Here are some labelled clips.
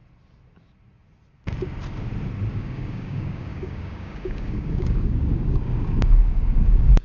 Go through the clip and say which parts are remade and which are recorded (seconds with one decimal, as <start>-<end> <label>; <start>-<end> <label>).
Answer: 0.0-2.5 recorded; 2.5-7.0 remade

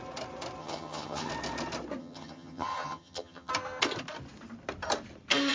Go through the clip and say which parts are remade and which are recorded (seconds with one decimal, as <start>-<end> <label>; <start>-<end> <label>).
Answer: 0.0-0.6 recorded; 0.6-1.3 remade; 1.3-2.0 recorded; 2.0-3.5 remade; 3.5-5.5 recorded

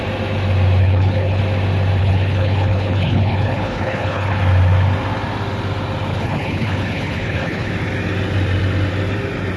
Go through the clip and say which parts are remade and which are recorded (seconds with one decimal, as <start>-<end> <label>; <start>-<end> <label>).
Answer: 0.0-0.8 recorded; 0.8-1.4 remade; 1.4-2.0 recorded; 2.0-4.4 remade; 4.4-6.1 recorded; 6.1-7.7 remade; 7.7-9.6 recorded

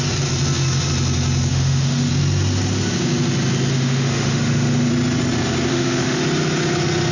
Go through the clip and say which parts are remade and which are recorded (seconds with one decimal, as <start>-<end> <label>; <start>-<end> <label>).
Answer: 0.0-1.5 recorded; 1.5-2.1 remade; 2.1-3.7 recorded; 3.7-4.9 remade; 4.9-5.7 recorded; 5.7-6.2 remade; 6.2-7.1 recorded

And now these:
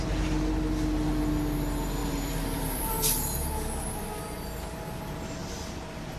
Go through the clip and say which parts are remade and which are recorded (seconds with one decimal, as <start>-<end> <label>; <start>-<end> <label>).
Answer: 0.0-2.0 recorded; 2.0-4.2 remade; 4.2-5.4 recorded; 5.4-6.2 remade